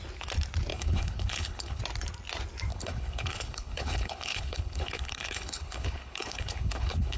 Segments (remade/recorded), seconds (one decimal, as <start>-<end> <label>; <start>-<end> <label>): 0.0-0.7 recorded; 0.7-1.8 remade; 1.8-2.7 recorded; 2.7-7.2 remade